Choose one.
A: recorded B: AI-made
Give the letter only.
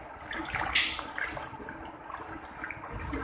B